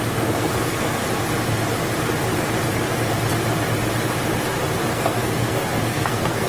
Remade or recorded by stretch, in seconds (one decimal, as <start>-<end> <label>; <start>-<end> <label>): 0.0-1.0 remade; 1.0-4.9 recorded; 4.9-6.5 remade